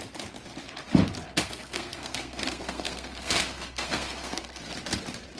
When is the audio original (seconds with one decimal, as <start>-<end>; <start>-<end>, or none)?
0.0-1.4; 4.6-5.4